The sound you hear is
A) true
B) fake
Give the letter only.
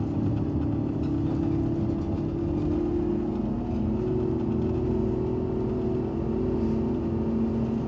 A